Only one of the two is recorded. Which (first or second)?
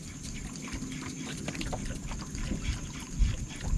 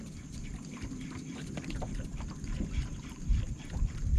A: first